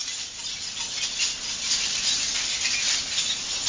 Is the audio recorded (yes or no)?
yes